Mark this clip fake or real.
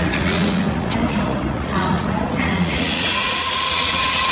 fake